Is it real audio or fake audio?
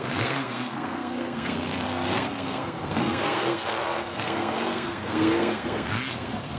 fake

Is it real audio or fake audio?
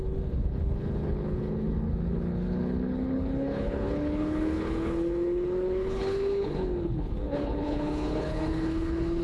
fake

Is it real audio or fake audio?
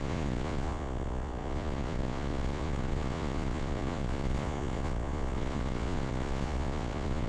fake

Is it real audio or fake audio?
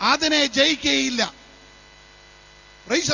real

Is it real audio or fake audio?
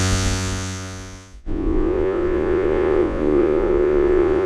fake